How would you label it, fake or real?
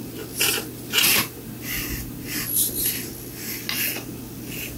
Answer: real